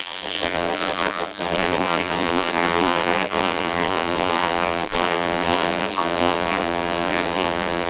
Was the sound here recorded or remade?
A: remade